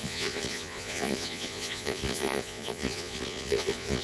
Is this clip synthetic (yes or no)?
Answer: yes